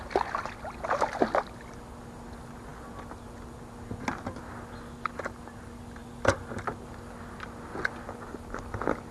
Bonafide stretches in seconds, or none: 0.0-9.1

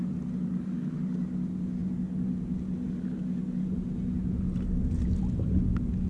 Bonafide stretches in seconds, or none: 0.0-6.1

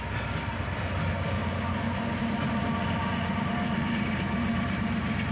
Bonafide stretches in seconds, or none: 0.0-1.4; 2.2-3.0; 4.8-5.3

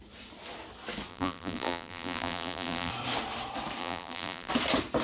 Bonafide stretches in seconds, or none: 0.0-1.1; 2.9-3.8; 4.5-5.0

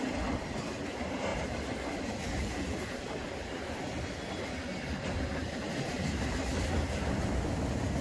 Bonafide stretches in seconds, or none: 0.0-1.3; 3.6-5.4; 6.4-8.0